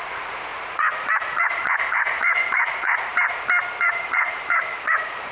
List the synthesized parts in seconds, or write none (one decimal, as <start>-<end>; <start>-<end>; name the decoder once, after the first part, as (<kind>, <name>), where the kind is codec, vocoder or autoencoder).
0.0-3.1 (vocoder, Vocos); 3.8-5.3